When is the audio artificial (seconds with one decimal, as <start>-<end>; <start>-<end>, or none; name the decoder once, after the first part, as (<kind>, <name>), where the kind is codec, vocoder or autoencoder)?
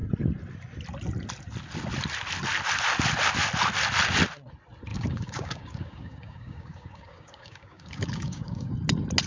4.9-8.7 (codec, DAC)